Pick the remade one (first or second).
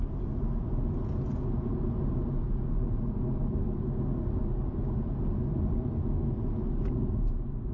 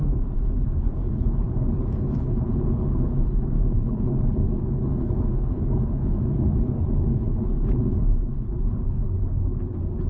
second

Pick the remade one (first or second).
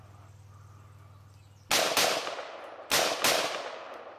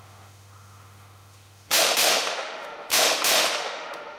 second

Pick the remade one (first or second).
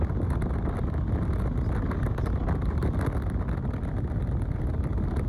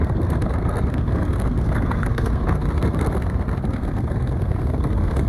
second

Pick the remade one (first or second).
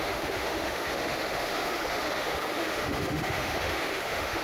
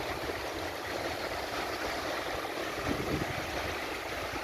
first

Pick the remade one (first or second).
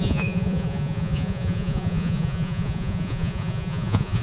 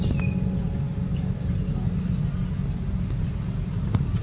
first